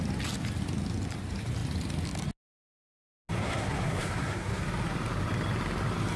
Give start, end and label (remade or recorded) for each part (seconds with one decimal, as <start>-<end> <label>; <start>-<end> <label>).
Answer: 0.0-3.4 recorded; 3.4-4.6 remade; 4.6-6.2 recorded